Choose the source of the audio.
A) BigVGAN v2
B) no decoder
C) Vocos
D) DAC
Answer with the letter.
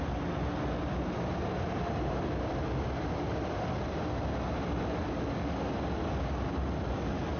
B